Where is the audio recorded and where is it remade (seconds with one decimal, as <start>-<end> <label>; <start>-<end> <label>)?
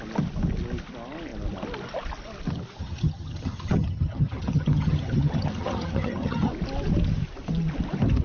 0.0-2.8 recorded; 2.8-6.5 remade; 6.5-8.2 recorded